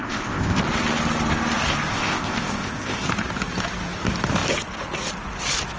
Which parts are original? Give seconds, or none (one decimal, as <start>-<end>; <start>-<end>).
0.6-1.9; 3.0-5.8